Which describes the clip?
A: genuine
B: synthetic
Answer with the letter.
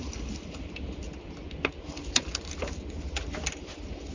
A